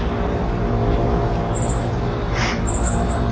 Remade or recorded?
remade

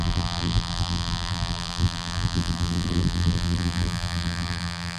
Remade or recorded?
remade